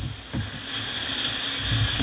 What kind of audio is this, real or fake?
real